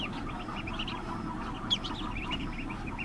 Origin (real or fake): real